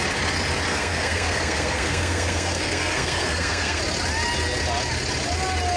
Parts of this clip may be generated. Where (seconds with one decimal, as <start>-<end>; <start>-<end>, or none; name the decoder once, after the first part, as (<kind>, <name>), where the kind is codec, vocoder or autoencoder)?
0.7-3.8 (codec, SNAC)